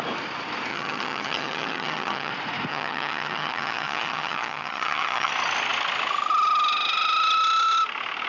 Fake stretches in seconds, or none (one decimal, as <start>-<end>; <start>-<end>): 0.7-2.3; 2.7-5.3